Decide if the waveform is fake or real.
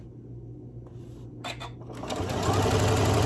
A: real